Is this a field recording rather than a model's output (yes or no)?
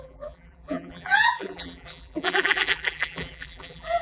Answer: no